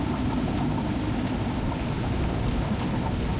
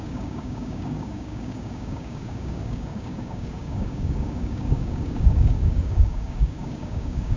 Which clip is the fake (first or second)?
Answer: second